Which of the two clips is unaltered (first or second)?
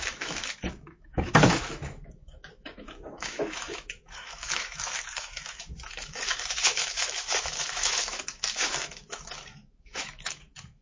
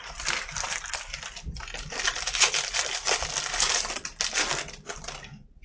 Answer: second